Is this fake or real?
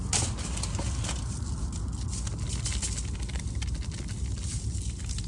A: real